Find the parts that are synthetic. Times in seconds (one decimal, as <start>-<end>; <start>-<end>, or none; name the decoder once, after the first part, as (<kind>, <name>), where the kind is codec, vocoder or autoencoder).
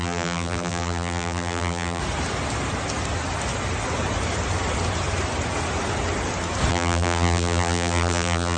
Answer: 0.0-2.0 (vocoder, BigVGAN v2); 6.7-8.6